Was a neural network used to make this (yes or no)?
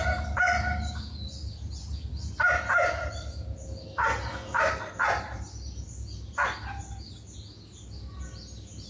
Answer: no